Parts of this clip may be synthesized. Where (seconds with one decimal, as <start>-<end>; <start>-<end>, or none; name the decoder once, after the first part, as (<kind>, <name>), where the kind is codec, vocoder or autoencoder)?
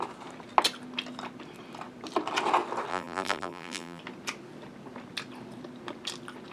2.9-4.0 (vocoder, BigVGAN v2)